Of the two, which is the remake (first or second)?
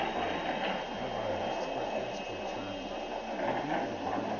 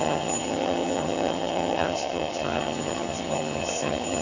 second